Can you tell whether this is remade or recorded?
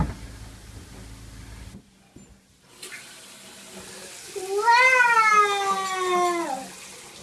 recorded